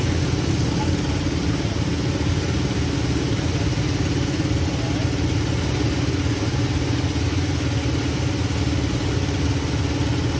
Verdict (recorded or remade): recorded